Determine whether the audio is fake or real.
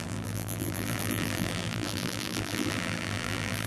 fake